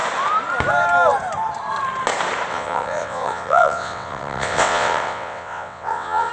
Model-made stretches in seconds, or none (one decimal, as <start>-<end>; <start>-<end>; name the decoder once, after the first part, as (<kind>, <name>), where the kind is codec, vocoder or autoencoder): 2.5-6.3 (vocoder, WaveNeXt)